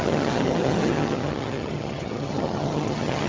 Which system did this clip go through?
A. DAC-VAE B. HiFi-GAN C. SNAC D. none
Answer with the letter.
B